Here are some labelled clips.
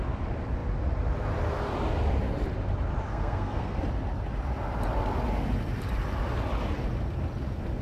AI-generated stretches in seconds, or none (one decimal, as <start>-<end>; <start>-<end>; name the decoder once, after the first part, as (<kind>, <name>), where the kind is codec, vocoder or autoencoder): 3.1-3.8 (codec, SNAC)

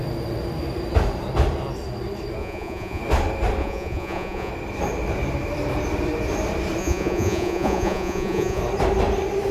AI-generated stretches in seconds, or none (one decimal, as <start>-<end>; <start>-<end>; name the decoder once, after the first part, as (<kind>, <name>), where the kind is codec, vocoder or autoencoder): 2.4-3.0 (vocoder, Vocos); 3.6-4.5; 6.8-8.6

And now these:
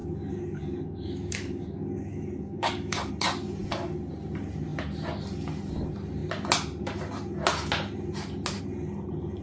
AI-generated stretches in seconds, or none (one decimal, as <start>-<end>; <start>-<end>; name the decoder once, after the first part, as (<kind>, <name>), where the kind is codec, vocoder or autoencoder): 0.0-3.1 (codec, DAC)

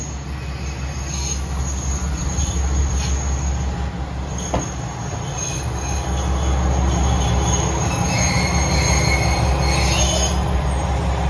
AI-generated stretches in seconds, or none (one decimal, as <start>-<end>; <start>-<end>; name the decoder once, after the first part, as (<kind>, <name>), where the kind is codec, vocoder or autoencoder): none

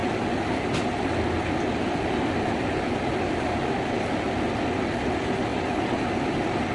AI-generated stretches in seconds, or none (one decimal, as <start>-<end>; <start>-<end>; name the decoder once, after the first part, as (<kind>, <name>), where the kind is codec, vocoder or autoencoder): 5.5-6.1 (vocoder, BigVGAN v2)

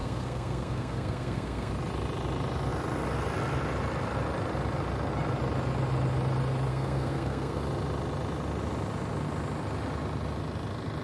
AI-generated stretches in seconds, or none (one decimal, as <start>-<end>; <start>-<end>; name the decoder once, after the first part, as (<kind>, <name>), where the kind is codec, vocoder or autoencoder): 0.0-1.7 (codec, SNAC); 6.7-7.6

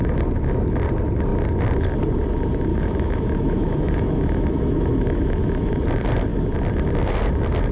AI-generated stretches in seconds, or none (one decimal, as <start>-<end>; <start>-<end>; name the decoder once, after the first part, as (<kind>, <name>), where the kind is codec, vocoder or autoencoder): 2.7-5.7 (autoencoder, DAC-VAE)